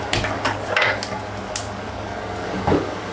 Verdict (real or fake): fake